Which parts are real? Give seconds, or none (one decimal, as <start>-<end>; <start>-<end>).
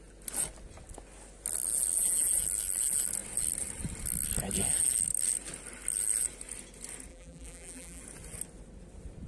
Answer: 0.0-7.1; 8.0-9.3